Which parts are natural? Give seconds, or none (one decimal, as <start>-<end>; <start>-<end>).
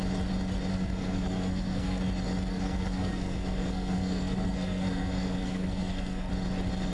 0.0-0.7; 2.0-2.5; 6.3-6.9